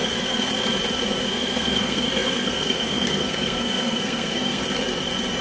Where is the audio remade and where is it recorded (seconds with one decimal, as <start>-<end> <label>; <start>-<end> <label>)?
0.0-0.5 remade; 0.5-1.2 recorded; 1.2-4.6 remade; 4.6-5.4 recorded